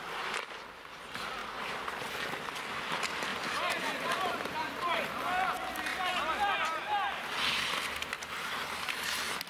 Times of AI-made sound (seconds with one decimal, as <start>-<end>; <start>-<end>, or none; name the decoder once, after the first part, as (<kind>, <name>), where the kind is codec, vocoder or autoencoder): none